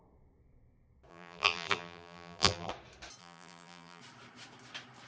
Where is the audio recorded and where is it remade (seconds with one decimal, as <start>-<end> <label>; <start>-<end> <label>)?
0.0-1.1 recorded; 1.1-2.7 remade; 2.7-3.2 recorded; 3.2-4.0 remade; 4.0-5.1 recorded